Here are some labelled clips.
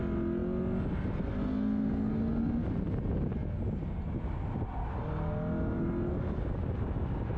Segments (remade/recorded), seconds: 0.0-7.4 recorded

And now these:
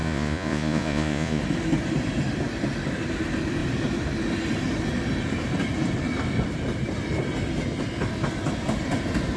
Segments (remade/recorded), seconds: 0.0-1.4 remade; 1.4-9.4 recorded

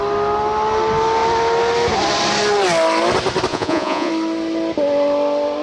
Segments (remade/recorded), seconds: 0.0-3.5 recorded; 3.5-4.1 remade; 4.1-5.6 recorded

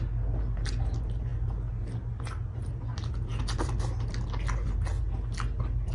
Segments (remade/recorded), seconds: 0.0-5.9 recorded

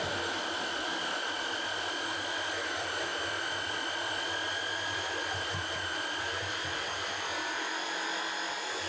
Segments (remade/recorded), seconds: 0.0-8.9 recorded